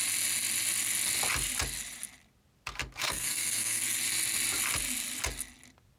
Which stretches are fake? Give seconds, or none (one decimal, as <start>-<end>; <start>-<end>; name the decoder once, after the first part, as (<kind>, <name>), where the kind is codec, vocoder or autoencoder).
3.0-3.8 (codec, SNAC)